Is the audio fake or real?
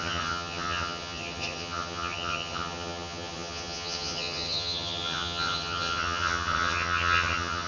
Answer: fake